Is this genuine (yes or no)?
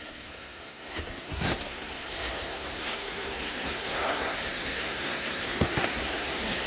no